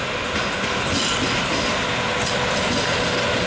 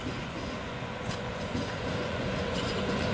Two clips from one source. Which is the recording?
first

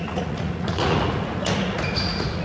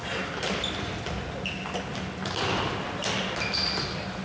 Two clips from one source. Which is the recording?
second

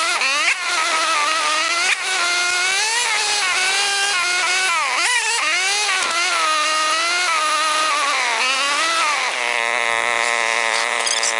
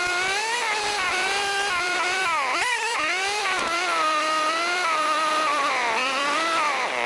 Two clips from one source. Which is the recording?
first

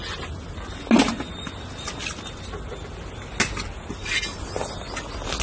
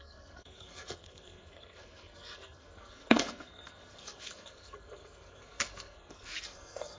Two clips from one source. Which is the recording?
first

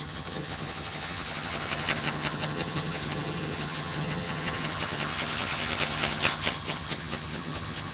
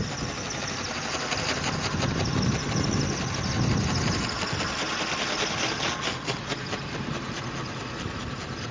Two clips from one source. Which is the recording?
second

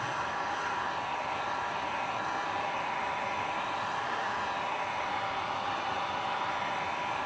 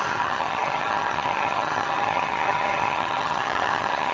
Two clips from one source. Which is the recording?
first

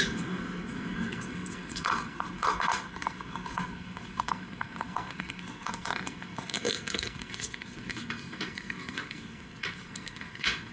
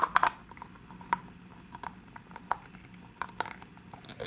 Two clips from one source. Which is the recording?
second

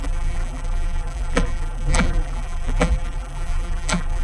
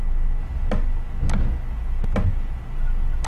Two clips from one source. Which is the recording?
second